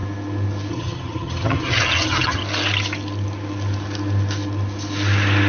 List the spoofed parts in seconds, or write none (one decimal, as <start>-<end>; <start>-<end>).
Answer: 0.7-2.4